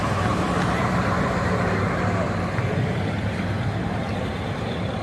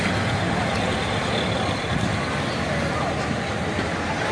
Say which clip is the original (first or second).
second